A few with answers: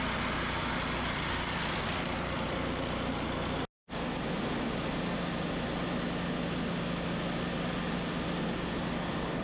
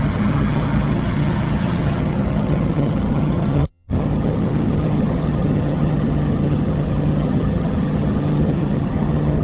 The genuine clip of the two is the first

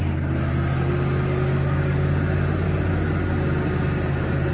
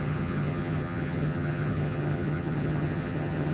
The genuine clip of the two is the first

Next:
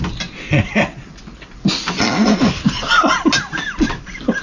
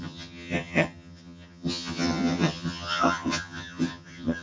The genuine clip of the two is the first